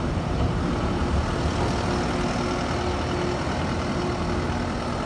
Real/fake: real